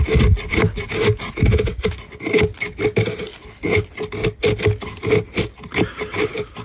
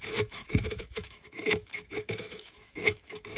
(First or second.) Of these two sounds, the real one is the first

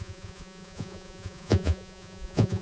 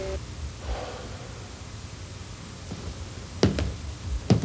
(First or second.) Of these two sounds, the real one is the second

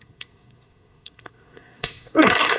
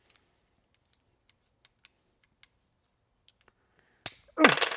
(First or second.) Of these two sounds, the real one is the second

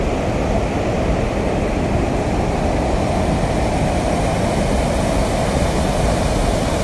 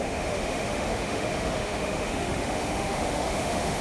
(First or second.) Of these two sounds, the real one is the first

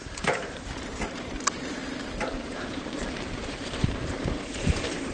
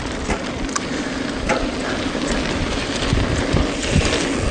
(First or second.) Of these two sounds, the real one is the second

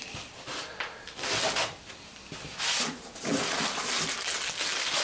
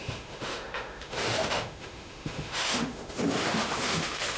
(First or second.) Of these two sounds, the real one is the first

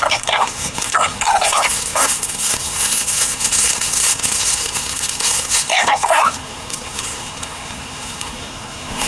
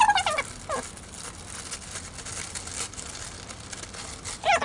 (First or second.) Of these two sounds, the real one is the second